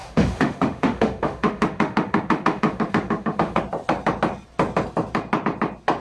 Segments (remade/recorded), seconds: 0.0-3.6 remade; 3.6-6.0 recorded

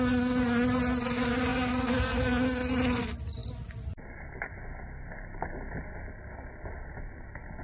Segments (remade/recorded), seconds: 0.0-7.6 recorded